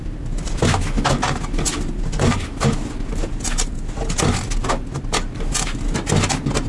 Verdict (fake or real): real